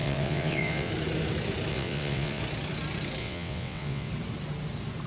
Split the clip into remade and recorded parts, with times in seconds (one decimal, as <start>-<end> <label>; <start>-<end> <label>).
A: 0.0-0.9 remade; 0.9-1.7 recorded; 1.7-2.4 remade; 2.4-3.2 recorded; 3.2-4.1 remade; 4.1-5.1 recorded